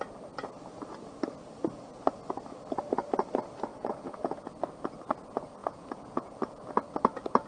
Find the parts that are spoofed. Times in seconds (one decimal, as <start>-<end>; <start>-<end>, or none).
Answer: 3.7-4.5; 5.6-6.7